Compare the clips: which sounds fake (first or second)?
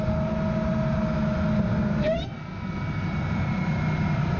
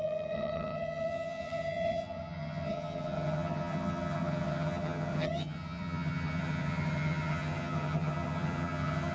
second